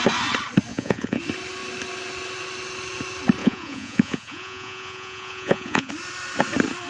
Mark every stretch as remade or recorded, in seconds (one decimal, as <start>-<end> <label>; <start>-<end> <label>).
0.0-0.7 recorded; 0.7-1.2 remade; 1.2-3.4 recorded; 3.4-5.9 remade; 5.9-6.9 recorded